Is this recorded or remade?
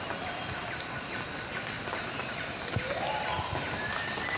recorded